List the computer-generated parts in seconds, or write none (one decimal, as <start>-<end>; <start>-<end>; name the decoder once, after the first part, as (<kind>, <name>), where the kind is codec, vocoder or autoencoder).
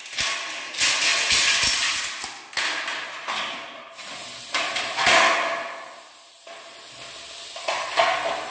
none